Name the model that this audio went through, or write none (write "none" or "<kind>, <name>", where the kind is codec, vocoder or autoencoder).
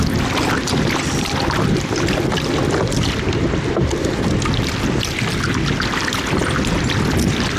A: none